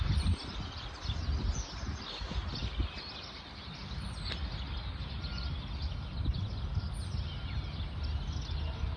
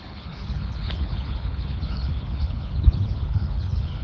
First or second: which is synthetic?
second